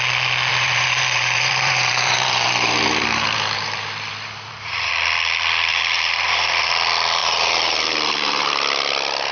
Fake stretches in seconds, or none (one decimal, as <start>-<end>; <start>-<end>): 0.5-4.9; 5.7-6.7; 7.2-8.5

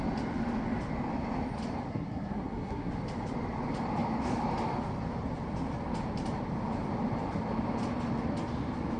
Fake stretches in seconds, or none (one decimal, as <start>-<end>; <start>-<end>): 1.9-2.9

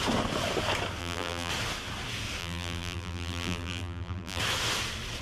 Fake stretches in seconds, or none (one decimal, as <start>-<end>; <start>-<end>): 1.0-1.5; 2.4-4.4

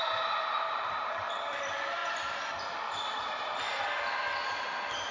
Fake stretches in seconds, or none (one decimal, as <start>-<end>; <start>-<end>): 0.0-2.0

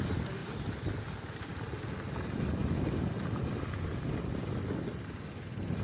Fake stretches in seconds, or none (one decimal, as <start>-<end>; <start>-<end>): none